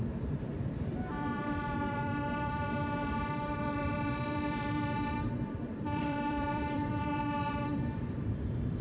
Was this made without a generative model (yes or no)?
no